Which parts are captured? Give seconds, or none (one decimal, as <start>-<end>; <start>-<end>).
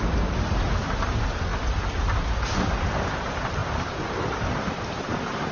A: 0.0-5.5